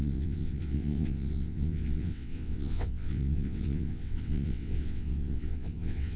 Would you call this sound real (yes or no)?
no